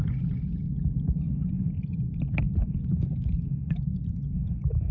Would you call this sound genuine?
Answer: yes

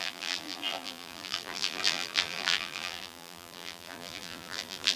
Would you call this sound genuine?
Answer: no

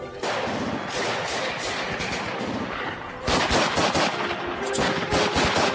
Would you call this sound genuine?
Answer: yes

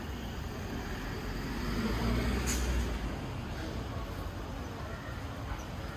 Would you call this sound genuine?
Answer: yes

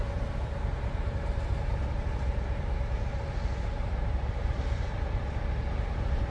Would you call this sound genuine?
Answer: no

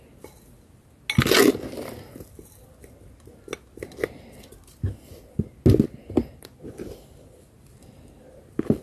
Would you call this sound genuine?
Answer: yes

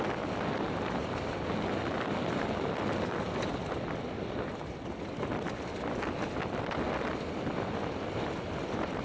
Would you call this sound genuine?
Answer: yes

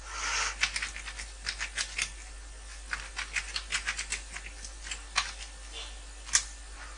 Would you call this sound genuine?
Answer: yes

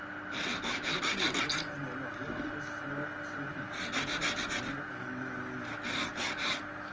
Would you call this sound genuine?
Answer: yes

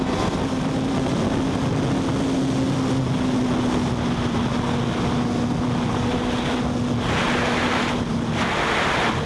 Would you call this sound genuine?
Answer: yes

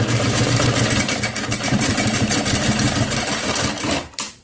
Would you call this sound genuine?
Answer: no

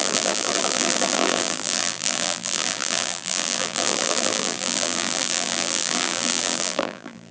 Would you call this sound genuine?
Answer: no